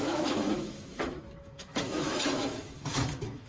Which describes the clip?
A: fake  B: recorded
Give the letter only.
A